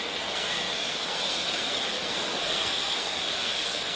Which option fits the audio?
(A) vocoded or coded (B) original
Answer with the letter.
A